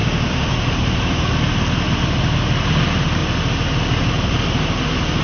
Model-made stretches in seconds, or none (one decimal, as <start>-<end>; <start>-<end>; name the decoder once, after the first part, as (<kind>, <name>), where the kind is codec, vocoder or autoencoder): 0.0-1.3 (vocoder, BigVGAN v2)